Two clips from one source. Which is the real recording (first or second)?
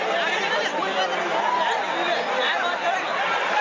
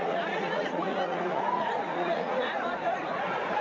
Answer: first